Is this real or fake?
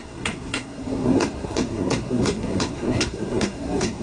fake